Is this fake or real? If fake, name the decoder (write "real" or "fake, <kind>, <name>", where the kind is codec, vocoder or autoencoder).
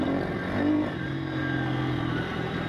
fake, vocoder, BigVGAN v2